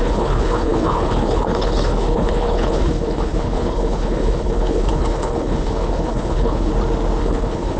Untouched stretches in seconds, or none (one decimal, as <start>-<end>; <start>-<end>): 6.7-7.2